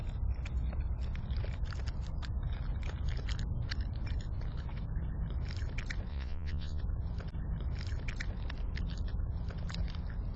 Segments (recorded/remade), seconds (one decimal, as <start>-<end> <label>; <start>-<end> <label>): 0.0-6.1 recorded; 6.1-6.8 remade; 6.8-10.4 recorded